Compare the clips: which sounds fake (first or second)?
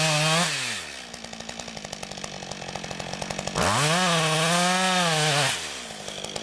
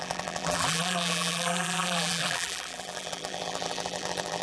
second